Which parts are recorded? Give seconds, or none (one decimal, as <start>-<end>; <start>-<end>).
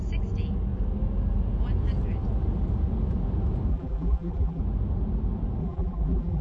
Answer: 0.0-3.7; 4.6-5.6